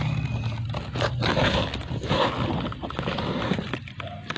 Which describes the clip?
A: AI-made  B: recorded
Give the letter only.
B